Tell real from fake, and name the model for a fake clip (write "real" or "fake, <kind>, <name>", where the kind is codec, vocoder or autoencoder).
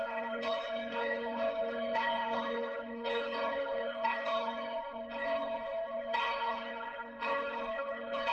fake, codec, HILCodec